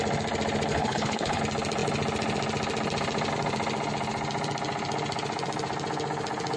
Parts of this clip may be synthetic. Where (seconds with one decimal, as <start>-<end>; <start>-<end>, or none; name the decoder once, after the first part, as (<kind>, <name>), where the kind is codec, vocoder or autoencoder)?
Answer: 0.7-1.4 (codec, HILCodec)